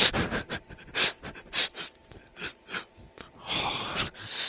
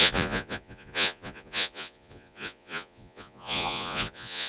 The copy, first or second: second